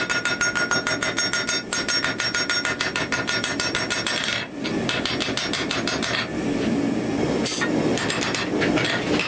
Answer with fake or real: real